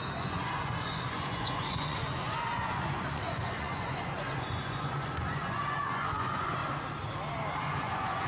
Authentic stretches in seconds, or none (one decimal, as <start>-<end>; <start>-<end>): 6.6-7.6